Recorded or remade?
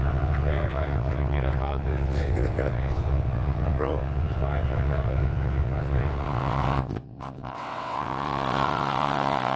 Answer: remade